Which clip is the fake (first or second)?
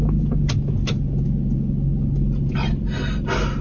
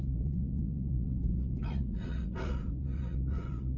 second